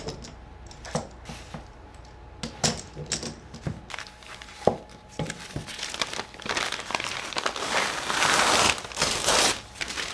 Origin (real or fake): real